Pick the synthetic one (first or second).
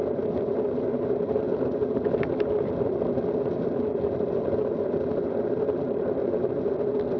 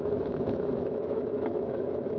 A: second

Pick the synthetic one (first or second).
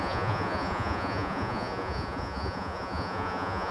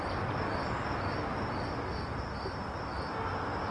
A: first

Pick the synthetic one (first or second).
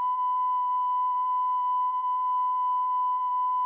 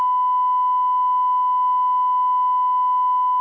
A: first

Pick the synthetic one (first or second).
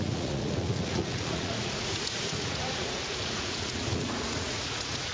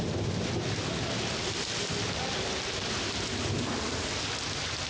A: first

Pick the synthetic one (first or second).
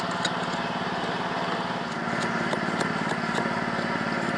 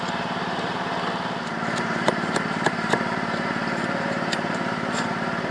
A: second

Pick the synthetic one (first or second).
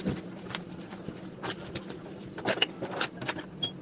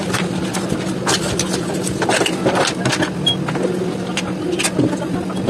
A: first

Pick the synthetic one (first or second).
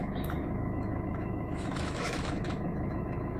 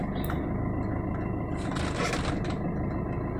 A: first